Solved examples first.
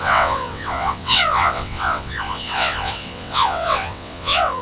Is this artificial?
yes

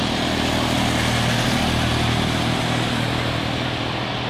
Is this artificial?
no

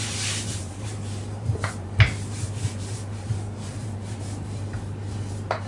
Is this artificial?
yes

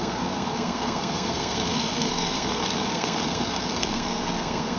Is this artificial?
yes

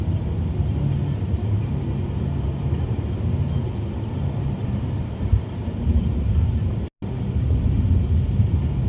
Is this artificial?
no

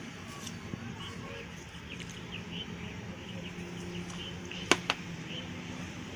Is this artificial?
no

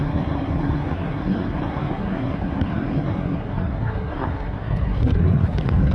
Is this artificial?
yes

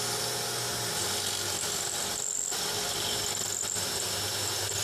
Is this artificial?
no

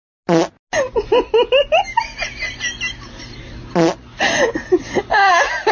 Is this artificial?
no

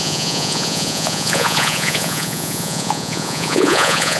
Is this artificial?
yes